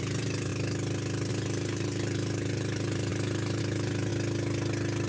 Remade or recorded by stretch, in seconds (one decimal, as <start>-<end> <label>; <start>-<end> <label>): 0.0-0.5 remade; 0.5-1.3 recorded; 1.3-4.1 remade; 4.1-5.1 recorded